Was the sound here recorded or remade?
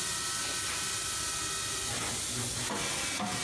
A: recorded